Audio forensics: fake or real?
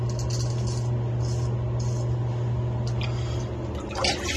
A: real